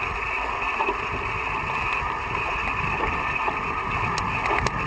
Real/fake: real